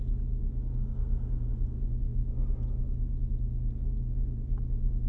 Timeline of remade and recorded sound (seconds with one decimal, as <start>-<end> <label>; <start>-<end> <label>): 0.0-0.8 recorded; 0.8-1.5 remade; 1.5-5.1 recorded